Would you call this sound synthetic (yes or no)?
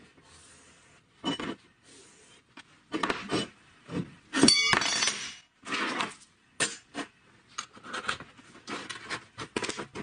no